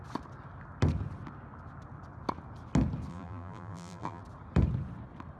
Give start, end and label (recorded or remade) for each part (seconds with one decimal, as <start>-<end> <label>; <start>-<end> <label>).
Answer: 0.0-3.1 recorded; 3.1-4.2 remade; 4.2-5.4 recorded